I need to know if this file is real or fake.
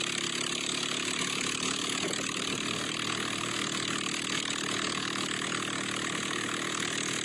real